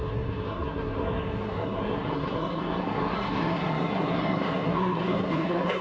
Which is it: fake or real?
fake